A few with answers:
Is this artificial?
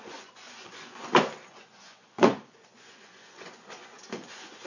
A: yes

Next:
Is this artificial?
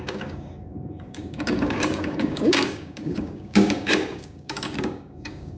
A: yes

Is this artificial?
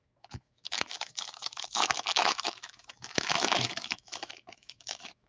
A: yes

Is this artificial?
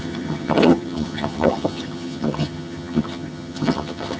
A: yes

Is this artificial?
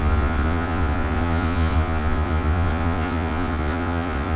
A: yes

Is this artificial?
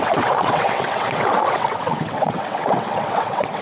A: yes